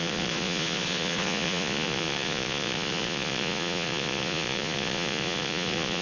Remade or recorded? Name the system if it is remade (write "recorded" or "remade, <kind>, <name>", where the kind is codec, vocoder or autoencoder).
remade, vocoder, Vocos